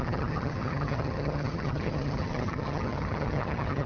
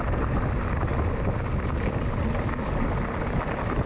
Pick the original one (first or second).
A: second